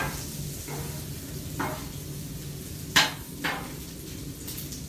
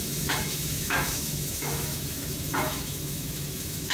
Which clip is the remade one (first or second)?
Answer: second